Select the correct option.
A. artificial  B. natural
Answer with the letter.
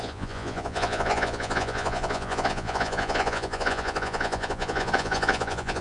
A